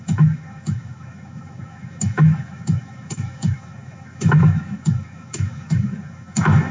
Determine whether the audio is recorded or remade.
remade